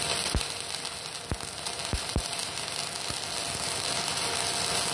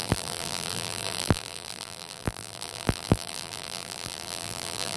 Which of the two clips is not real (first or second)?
second